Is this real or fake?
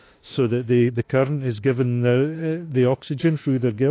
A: fake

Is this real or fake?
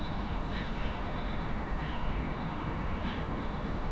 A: fake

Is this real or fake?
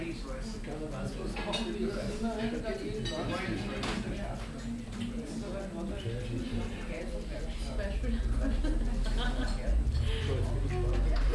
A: real